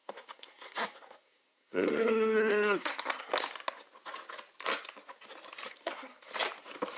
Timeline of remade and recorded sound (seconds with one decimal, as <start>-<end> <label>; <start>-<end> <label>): 0.0-3.3 remade; 3.3-5.7 recorded; 5.7-6.3 remade; 6.3-7.0 recorded